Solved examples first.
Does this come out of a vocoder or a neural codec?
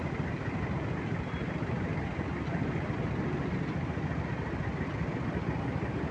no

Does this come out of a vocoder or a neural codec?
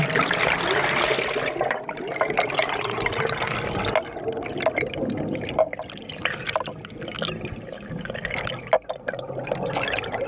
no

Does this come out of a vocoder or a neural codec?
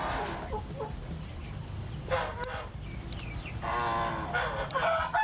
yes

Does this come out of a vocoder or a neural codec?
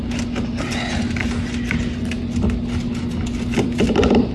no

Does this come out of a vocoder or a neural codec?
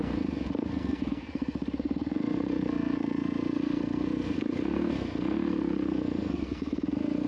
yes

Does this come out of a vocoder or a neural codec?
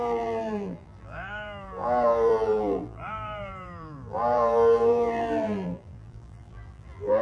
yes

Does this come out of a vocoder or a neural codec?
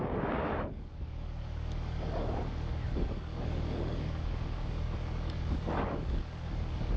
yes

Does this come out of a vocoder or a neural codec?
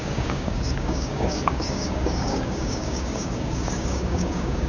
yes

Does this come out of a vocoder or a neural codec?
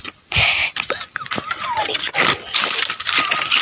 no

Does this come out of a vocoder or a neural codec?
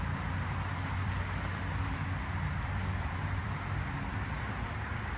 yes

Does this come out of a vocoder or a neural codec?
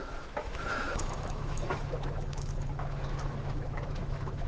yes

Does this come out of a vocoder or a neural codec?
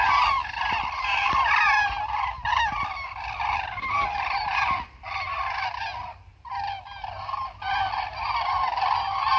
no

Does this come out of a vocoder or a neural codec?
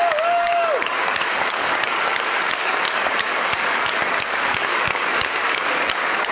yes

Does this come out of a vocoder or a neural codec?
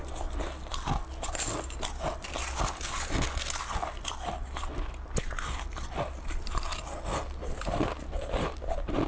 no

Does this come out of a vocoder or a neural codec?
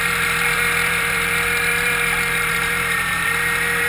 yes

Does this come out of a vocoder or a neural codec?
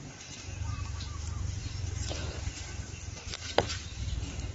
yes